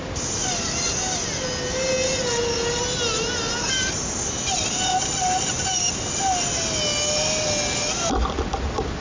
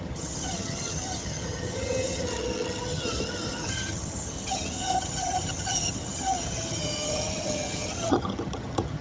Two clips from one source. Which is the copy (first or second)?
second